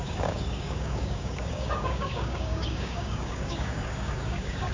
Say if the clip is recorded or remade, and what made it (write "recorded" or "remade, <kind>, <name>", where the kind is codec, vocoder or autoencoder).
remade, codec, DAC